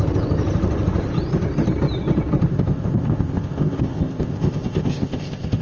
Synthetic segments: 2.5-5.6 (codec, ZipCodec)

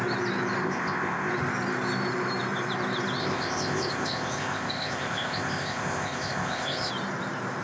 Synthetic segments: 0.6-1.3 (codec, ZipCodec); 3.2-6.9

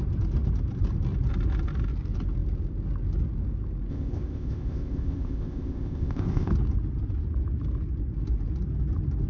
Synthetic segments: 3.9-6.5 (codec, ZipCodec)

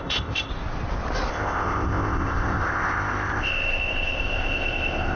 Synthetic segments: 0.0-0.5 (codec, ZipCodec); 1.3-5.2

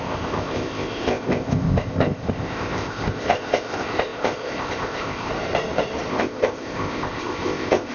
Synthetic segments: 0.0-5.3 (codec, ZipCodec); 6.1-7.9